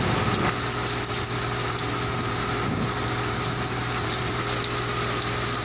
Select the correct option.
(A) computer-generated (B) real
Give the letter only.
B